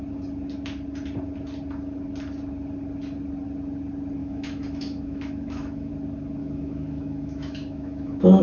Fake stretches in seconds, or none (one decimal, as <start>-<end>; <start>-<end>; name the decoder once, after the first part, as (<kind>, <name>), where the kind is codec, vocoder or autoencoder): 4.2-5.9 (autoencoder, DAC-VAE); 6.4-8.4